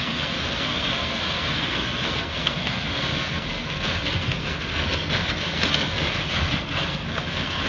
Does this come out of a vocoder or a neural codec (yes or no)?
yes